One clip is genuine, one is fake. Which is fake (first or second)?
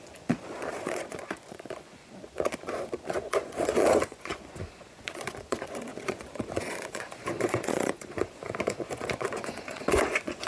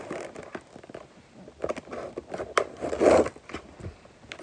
first